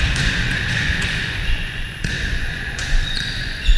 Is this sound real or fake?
fake